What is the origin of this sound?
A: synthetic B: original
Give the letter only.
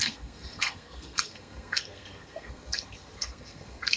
A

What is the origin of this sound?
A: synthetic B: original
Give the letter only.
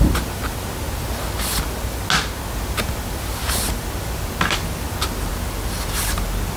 B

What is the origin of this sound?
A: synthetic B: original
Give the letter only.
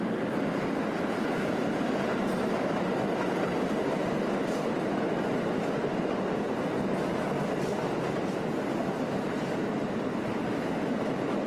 B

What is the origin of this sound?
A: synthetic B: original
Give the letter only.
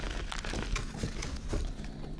B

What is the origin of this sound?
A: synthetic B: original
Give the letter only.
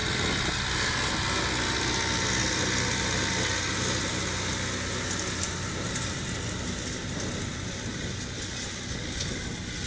B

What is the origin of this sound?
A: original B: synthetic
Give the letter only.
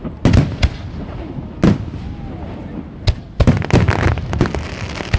A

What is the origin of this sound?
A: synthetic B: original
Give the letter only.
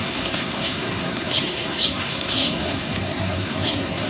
A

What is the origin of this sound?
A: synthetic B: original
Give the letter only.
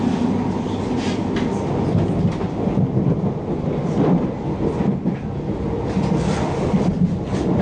B